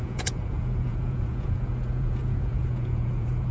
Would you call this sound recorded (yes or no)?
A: no